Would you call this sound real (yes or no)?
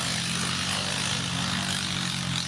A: yes